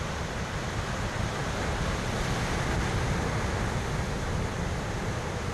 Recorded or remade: recorded